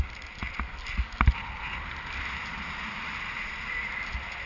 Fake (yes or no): no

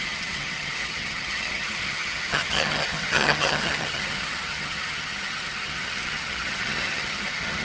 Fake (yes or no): yes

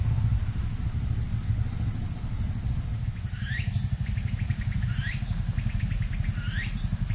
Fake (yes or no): no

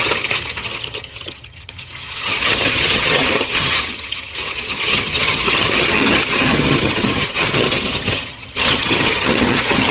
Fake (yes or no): yes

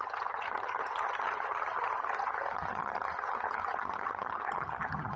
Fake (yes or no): yes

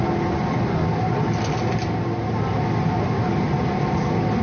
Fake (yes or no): no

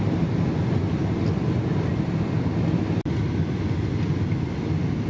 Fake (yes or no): no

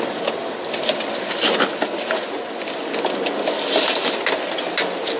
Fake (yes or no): no